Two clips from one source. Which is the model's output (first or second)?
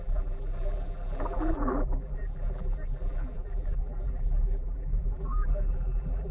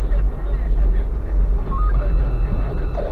first